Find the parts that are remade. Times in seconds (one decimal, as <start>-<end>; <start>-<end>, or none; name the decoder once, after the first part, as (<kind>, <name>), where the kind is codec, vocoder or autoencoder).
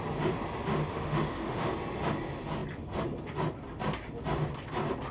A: 0.9-1.7 (autoencoder, DAC-VAE)